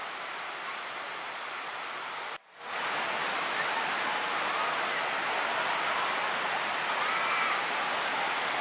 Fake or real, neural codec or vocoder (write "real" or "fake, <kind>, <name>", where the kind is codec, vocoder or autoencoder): real